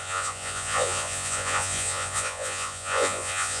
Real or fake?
fake